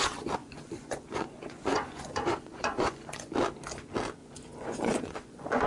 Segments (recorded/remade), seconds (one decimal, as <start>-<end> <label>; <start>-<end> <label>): 0.0-0.4 recorded; 0.4-3.3 remade; 3.3-4.2 recorded; 4.2-5.7 remade